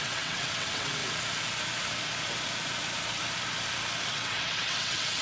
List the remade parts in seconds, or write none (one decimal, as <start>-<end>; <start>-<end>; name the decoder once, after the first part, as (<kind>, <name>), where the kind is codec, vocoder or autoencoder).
0.0-1.0 (vocoder, WaveNeXt); 4.1-5.2